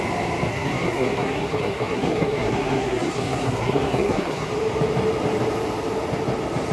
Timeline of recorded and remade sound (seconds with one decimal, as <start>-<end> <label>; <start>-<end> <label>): 0.0-0.5 recorded; 0.5-4.5 remade; 4.5-6.7 recorded